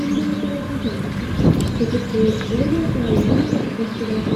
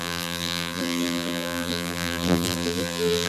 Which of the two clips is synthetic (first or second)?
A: second